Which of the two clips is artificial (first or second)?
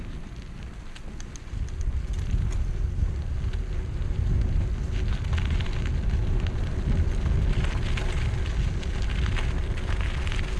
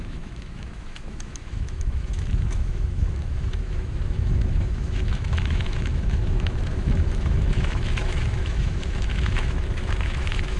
second